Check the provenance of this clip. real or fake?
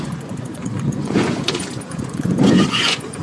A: fake